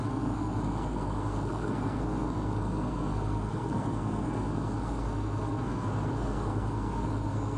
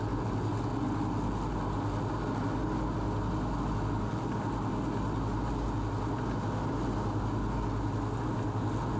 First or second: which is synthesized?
first